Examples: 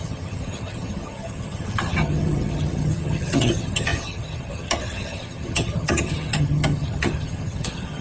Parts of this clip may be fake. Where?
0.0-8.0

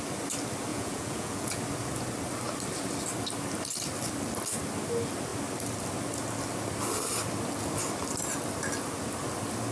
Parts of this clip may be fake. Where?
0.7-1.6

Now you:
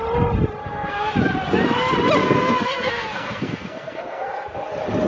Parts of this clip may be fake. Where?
0.6-1.1; 2.2-4.3